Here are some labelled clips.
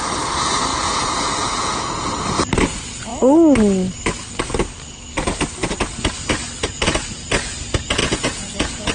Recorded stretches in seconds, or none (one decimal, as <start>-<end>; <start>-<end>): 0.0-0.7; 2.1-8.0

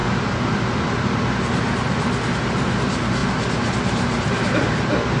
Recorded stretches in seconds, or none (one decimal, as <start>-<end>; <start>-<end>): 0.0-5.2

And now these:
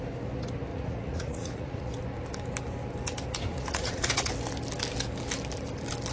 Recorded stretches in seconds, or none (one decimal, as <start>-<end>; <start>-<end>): 0.0-0.7; 1.9-3.5; 4.3-6.1